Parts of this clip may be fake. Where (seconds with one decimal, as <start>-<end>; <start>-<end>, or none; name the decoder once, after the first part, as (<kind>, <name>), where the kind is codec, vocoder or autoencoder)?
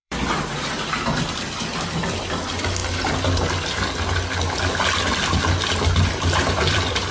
0.0-2.8 (vocoder, BigVGAN v2); 5.4-7.1